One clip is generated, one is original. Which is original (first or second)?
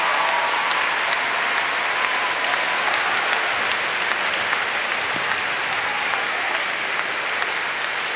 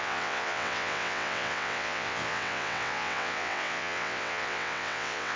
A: first